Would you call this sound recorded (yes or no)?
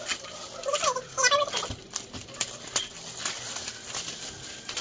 yes